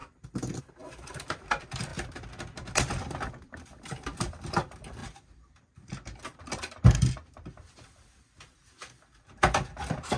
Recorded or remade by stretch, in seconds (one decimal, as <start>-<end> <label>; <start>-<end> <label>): 0.0-0.6 recorded; 0.6-1.9 remade; 1.9-2.8 recorded; 2.8-10.2 remade